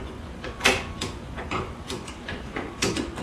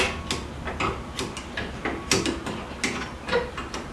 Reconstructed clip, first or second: first